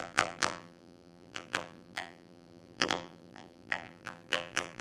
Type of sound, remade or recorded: remade